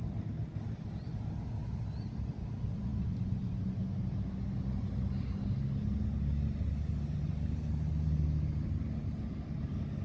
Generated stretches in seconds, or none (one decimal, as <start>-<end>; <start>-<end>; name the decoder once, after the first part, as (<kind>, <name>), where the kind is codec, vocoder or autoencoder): none

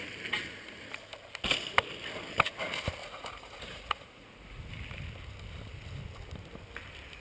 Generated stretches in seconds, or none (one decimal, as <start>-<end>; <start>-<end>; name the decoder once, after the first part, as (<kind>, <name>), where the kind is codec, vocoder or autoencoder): 3.0-4.6 (vocoder, Vocos)

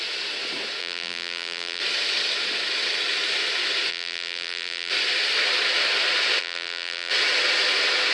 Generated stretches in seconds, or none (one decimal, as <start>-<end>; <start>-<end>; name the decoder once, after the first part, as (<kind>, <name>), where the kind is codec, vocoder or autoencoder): 0.8-1.8 (vocoder, BigVGAN v2); 3.9-4.9; 6.4-7.1

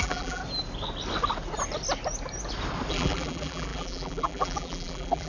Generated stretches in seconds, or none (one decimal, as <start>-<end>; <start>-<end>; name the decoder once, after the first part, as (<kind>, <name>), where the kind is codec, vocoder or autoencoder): 0.0-0.4 (vocoder, BigVGAN v2); 2.9-5.3

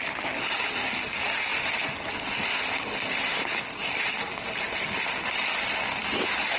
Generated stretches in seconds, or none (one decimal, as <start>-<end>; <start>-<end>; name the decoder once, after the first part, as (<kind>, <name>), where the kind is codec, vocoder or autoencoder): none

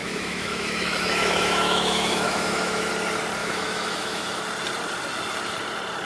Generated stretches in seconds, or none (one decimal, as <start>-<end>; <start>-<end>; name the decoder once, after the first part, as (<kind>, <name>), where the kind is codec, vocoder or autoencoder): 0.0-2.9 (autoencoder, DAC-VAE); 3.4-4.4